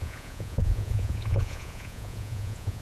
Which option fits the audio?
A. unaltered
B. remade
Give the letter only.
B